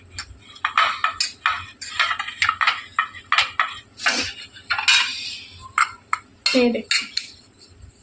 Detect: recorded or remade recorded